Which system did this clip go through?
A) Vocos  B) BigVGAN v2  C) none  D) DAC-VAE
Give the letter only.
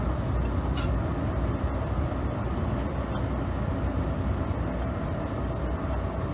C